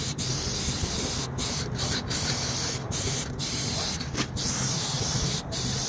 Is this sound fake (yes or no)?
no